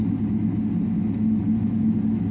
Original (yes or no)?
yes